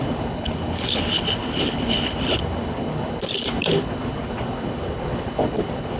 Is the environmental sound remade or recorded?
remade